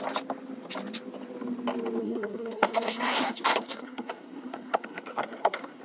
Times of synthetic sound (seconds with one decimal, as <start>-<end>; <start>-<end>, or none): 2.0-5.8